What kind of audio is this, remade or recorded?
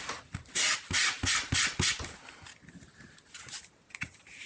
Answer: recorded